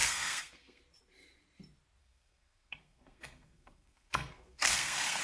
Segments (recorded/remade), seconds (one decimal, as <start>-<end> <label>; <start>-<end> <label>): 0.0-0.8 remade; 0.8-2.0 recorded; 2.0-5.2 remade